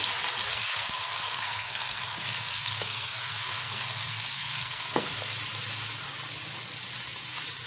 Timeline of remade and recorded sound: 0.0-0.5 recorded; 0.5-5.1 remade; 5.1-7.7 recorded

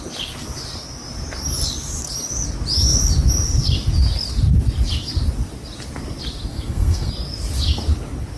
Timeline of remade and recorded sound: 0.0-6.5 recorded; 6.5-7.1 remade; 7.1-8.4 recorded

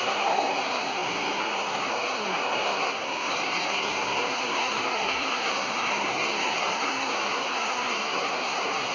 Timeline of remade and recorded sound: 0.0-8.9 remade

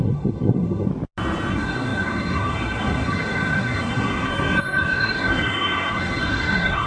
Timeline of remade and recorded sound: 0.0-0.9 remade; 0.9-1.5 recorded; 1.5-6.9 remade

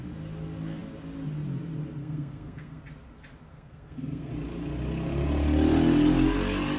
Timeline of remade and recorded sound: 0.0-2.0 recorded; 2.0-2.8 remade; 2.8-3.5 recorded; 3.5-4.3 remade; 4.3-6.8 recorded

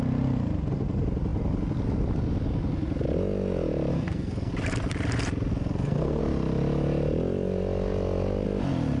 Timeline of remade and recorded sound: 0.0-3.9 recorded; 3.9-4.5 remade; 4.5-5.5 recorded; 5.5-6.2 remade; 6.2-9.0 recorded

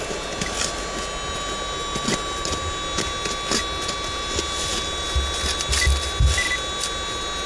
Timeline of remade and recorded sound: 0.0-7.5 recorded